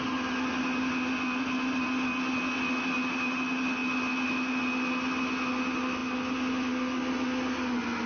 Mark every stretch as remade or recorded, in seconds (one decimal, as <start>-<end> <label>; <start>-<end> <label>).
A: 0.0-8.1 recorded